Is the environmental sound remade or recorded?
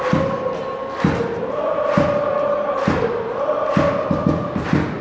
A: recorded